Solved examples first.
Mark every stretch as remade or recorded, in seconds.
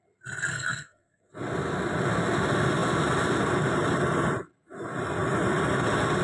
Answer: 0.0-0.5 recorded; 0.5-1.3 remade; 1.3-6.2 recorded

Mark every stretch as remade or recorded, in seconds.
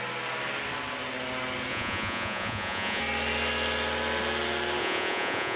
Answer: 0.0-1.7 recorded; 1.7-3.0 remade; 3.0-4.8 recorded; 4.8-5.6 remade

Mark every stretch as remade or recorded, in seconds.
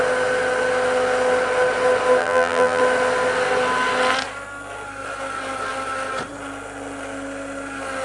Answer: 0.0-2.2 recorded; 2.2-2.8 remade; 2.8-8.0 recorded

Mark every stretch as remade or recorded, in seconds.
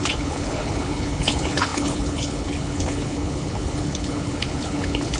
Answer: 0.0-5.2 remade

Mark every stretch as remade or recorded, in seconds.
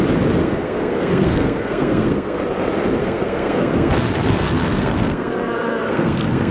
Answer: 0.0-0.4 recorded; 0.4-2.4 remade; 2.4-3.0 recorded; 3.0-6.5 remade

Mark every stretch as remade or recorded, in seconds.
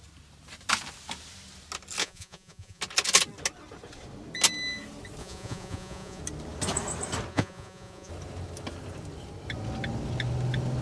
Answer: 0.0-2.0 recorded; 2.0-2.8 remade; 2.8-5.2 recorded; 5.2-6.2 remade; 6.2-7.3 recorded; 7.3-8.1 remade; 8.1-10.8 recorded